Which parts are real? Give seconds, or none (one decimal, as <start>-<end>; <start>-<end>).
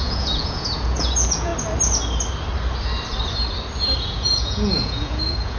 1.5-4.0